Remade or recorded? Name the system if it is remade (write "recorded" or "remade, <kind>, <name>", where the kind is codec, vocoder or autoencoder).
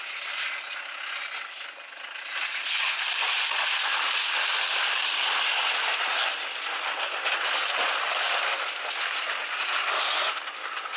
recorded